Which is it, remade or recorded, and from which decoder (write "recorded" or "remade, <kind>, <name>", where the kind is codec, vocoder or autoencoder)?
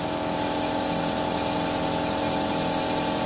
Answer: recorded